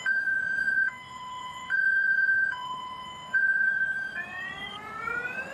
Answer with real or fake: fake